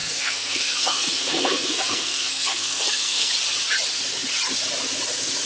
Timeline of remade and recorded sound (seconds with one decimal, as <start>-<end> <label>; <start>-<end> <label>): 0.0-3.3 remade; 3.3-5.5 recorded